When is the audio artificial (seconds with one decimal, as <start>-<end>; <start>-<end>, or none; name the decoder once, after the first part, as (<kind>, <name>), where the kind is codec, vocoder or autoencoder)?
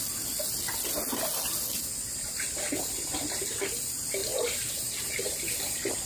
4.2-5.4 (vocoder, BigVGAN v2)